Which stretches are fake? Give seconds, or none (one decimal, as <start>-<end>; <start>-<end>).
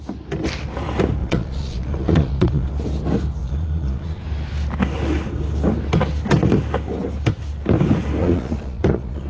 1.2-2.7; 3.4-4.2; 8.2-9.3